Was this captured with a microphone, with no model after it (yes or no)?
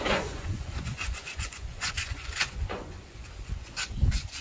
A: no